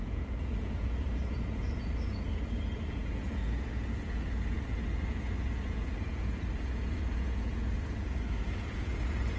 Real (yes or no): no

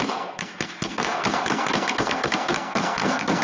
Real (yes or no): no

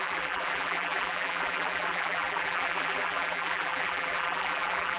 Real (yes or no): no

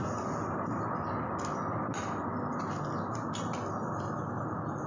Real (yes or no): yes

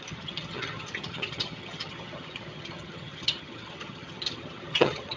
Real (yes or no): no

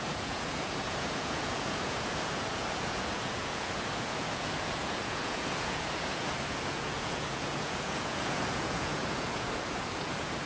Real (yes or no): no